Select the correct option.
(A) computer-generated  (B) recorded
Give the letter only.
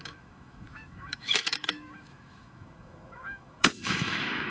A